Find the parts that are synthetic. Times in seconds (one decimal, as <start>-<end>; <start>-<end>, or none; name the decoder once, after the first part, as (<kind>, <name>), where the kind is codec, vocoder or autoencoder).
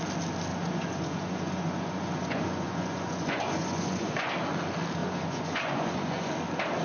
0.5-4.3 (vocoder, Vocos); 5.0-6.3